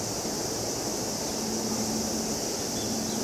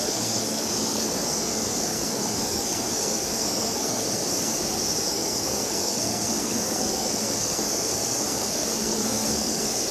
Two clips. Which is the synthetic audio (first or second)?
second